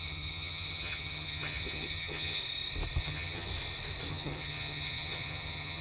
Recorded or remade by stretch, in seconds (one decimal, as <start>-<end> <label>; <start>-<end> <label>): 0.0-2.4 remade; 2.4-3.0 recorded; 3.0-3.5 remade; 3.5-4.1 recorded; 4.1-5.8 remade